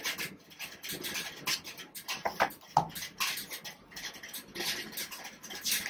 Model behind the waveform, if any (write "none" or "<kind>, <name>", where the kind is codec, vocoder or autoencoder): none